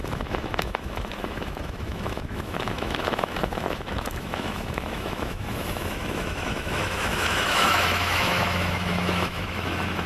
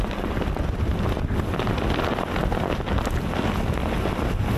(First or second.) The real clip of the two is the second